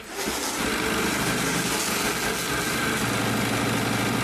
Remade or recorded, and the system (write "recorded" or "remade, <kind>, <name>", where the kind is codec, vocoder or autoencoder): recorded